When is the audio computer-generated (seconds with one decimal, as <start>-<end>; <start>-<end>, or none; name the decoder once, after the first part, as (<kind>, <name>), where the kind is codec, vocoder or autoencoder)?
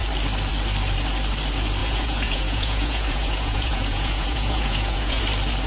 1.8-5.2 (vocoder, Vocos)